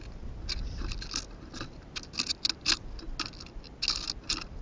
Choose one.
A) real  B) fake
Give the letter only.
A